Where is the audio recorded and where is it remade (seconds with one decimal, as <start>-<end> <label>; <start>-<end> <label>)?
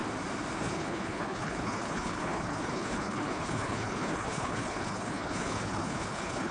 0.0-0.6 recorded; 0.6-6.5 remade